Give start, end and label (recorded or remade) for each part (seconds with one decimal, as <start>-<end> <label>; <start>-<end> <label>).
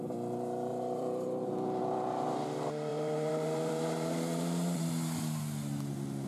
0.0-0.7 recorded; 0.7-1.5 remade; 1.5-2.9 recorded; 2.9-4.8 remade; 4.8-6.3 recorded